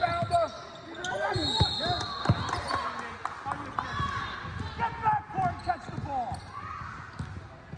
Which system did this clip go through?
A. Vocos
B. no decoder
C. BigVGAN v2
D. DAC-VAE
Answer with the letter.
B